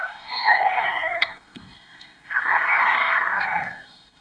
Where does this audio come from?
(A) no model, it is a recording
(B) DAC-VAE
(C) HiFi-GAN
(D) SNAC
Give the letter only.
D